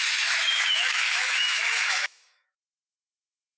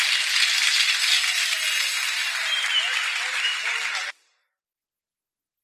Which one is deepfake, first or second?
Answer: first